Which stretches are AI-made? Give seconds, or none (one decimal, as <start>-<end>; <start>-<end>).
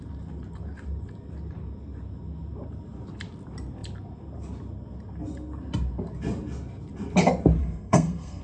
7.6-8.4